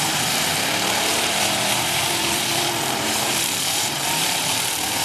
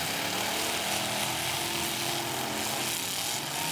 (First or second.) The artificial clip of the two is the first